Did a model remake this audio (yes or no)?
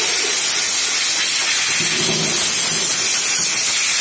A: no